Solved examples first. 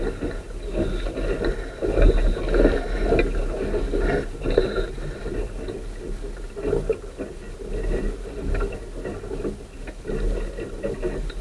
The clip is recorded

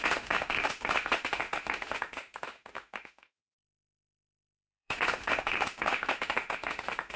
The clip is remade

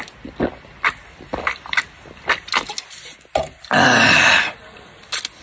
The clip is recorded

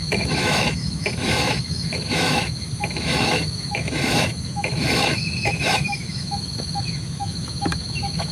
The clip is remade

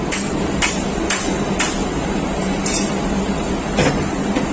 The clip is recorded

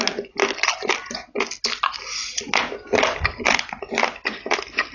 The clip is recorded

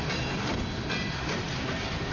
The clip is recorded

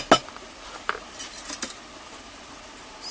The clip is recorded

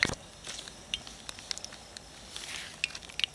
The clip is recorded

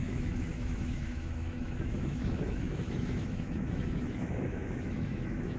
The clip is remade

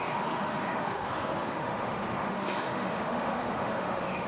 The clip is remade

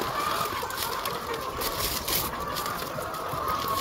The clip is recorded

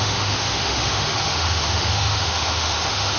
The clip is remade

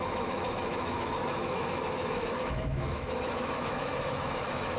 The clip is remade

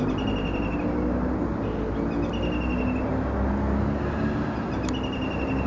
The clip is recorded